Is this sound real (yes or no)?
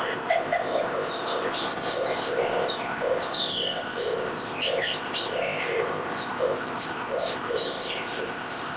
no